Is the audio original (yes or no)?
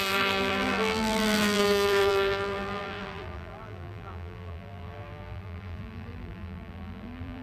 no